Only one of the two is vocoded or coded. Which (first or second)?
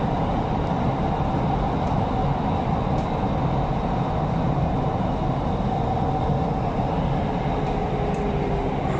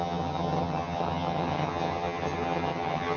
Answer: second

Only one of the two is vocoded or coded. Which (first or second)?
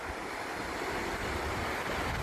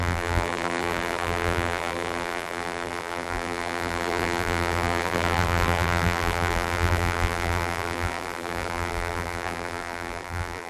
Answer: second